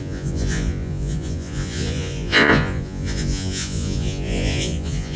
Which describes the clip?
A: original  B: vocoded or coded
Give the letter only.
B